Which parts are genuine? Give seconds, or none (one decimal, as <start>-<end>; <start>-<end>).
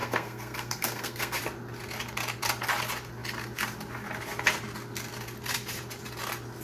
1.4-6.6